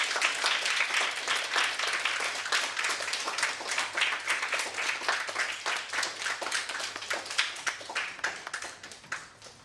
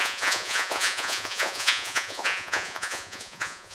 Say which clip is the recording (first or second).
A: first